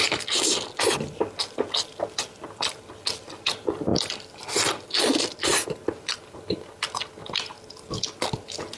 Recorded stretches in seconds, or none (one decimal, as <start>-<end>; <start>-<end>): 0.0-8.8